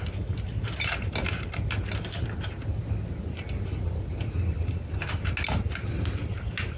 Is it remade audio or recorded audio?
recorded